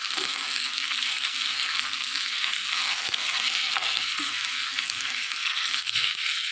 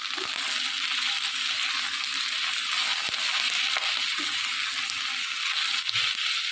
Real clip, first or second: second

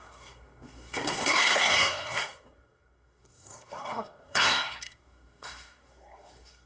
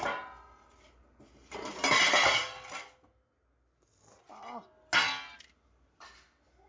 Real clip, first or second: second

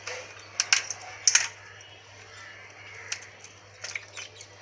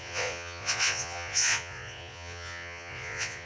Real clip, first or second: first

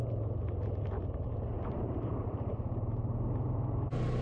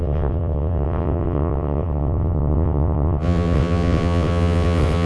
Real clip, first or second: first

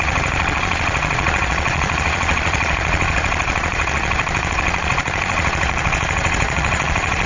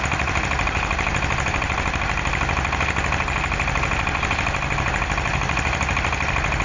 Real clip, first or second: second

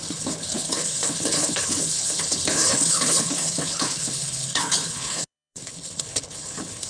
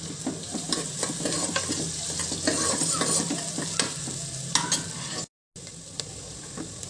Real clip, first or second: second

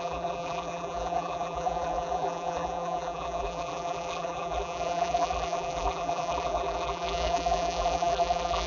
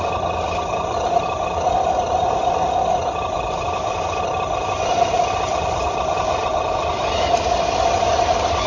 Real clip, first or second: second